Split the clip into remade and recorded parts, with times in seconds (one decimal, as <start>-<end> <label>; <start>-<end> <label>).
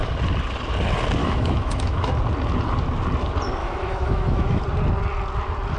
0.0-1.2 recorded; 1.2-2.1 remade; 2.1-3.6 recorded; 3.6-4.6 remade; 4.6-5.8 recorded